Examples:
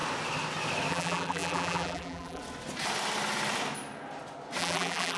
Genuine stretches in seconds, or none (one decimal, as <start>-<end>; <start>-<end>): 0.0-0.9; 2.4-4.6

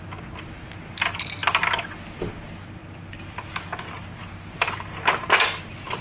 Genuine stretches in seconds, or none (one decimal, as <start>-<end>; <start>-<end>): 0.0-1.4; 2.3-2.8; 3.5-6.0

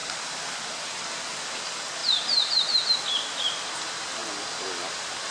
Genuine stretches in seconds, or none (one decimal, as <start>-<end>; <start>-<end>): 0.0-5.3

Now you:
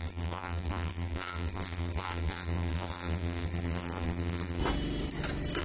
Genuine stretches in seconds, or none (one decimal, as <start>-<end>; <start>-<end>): 4.6-5.6